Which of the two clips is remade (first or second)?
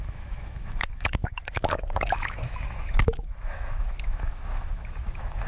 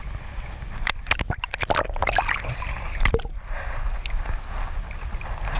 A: first